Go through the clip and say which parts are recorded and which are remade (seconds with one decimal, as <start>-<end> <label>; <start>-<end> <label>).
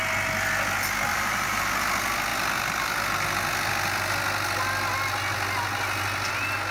0.0-1.1 recorded; 1.1-1.7 remade; 1.7-6.7 recorded